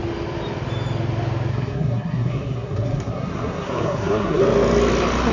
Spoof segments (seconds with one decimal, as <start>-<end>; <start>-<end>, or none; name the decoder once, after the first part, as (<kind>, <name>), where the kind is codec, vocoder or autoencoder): 1.5-4.4 (codec, SNAC)